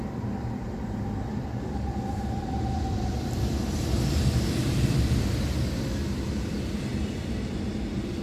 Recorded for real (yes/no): yes